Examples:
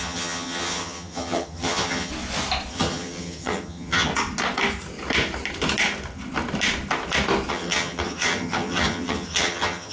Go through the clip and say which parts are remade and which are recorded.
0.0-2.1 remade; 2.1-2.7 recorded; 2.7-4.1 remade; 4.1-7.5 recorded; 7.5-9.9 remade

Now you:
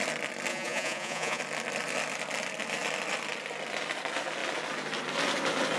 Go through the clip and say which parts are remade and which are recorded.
0.0-0.5 recorded; 0.5-1.4 remade; 1.4-5.8 recorded

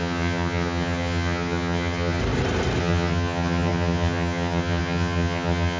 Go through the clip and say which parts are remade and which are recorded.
0.0-2.2 remade; 2.2-2.8 recorded; 2.8-5.8 remade

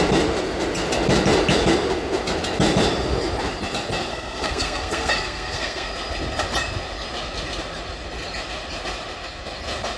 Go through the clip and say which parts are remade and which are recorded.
0.0-4.1 recorded; 4.1-5.9 remade; 5.9-10.0 recorded

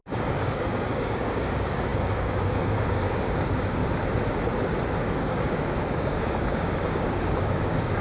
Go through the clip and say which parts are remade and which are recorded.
0.0-3.8 remade; 3.8-5.0 recorded; 5.0-8.0 remade